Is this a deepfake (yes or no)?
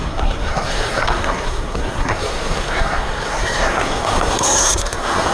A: yes